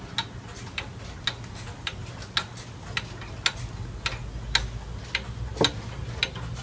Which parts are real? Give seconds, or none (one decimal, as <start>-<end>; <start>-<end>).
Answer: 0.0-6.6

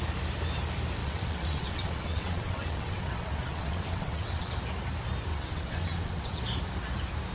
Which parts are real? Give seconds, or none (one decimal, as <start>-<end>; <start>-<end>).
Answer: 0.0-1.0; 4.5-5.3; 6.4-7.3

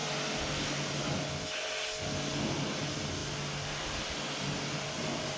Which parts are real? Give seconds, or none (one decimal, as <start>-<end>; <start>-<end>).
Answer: 0.0-5.4